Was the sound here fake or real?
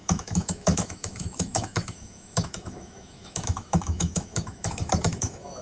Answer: fake